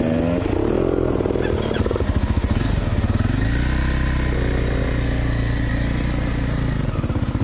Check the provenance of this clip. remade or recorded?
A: recorded